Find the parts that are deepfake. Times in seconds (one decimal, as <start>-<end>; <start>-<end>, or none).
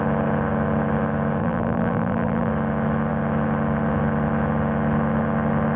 1.4-2.5